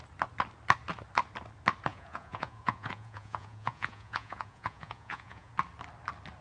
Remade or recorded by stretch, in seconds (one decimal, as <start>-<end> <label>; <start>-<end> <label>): 0.0-1.9 recorded; 1.9-5.5 remade; 5.5-6.4 recorded